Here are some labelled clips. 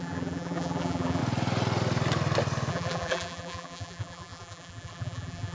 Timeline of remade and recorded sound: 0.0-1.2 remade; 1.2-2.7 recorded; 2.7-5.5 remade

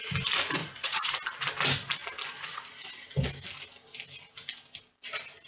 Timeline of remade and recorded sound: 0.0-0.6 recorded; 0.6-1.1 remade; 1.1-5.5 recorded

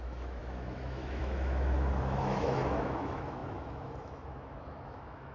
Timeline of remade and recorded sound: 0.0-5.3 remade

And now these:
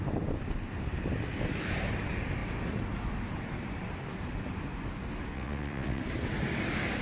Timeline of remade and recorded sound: 0.0-5.3 recorded; 5.3-6.0 remade; 6.0-7.0 recorded